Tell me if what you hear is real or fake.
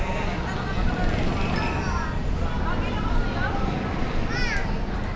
real